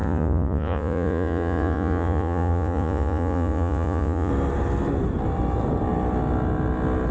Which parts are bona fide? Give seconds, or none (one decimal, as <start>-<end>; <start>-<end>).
4.3-7.1